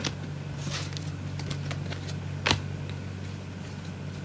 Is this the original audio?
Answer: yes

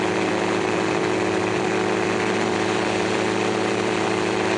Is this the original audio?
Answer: no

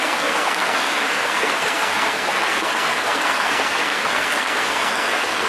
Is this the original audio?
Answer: no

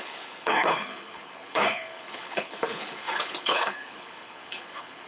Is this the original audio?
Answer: no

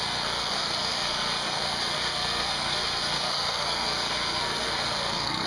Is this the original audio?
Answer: no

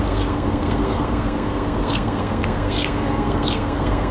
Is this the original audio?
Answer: no